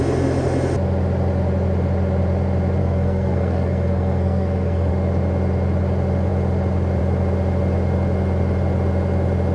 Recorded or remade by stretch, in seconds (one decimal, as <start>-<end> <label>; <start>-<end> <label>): 0.0-2.8 recorded; 2.8-4.9 remade; 4.9-9.5 recorded